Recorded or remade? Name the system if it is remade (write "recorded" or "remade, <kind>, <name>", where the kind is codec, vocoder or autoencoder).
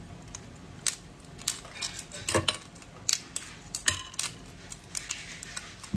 recorded